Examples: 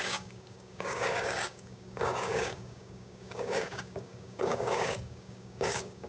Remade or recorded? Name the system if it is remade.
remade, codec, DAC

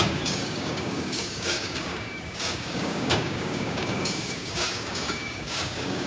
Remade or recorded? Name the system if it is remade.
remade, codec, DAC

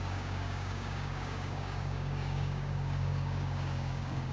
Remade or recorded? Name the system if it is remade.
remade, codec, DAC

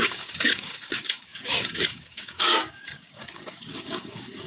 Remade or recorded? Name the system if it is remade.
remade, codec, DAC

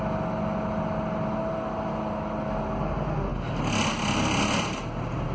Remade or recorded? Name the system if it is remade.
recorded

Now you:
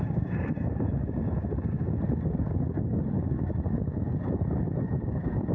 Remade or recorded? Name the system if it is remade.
remade, codec, DAC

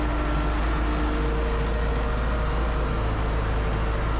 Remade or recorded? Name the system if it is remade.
recorded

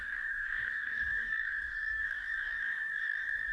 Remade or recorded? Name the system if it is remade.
remade, codec, DAC